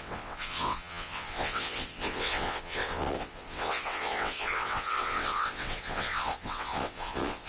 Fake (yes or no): yes